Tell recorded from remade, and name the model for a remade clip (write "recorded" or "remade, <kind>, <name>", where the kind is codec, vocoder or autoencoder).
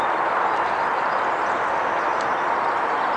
recorded